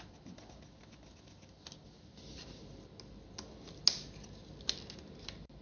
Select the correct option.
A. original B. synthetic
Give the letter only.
A